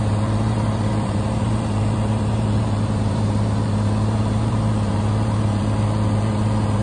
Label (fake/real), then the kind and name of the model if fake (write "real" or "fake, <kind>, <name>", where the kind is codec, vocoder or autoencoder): fake, vocoder, BigVGAN v2